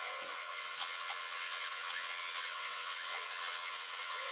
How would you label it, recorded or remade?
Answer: remade